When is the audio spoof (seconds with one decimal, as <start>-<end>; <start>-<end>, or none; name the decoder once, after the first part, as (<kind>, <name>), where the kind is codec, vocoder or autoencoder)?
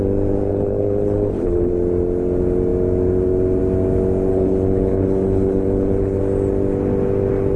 0.5-1.7 (codec, HILCodec); 4.3-6.2